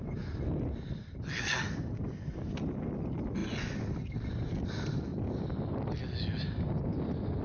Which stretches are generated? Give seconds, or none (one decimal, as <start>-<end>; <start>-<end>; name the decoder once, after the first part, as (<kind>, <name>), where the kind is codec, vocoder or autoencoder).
none